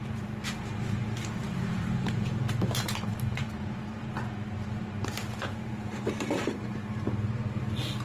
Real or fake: fake